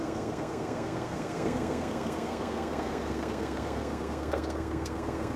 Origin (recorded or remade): remade